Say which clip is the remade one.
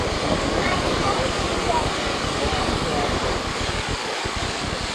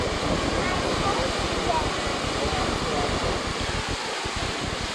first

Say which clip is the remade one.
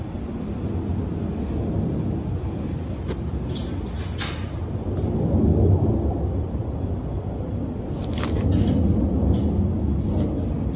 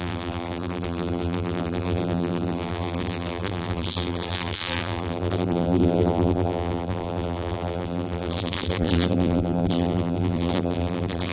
second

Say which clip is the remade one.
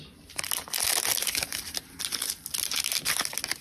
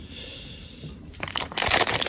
second